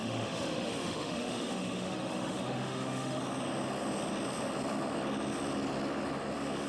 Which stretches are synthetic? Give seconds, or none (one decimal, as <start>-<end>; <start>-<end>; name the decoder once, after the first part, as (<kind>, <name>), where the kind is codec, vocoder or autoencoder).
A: 0.0-3.2 (autoencoder, DAC-VAE)